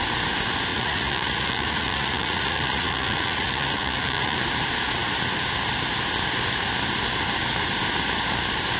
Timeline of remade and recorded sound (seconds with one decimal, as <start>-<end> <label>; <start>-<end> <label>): 0.0-0.7 recorded; 0.7-4.4 remade; 4.4-8.8 recorded